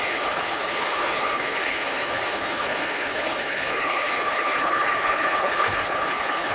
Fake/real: fake